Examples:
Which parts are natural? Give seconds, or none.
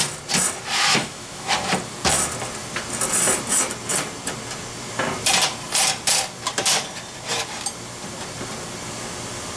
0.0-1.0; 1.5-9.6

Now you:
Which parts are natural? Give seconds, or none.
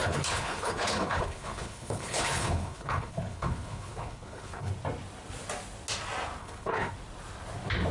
4.7-6.4; 6.9-7.9